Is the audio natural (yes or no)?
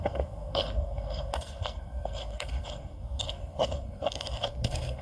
no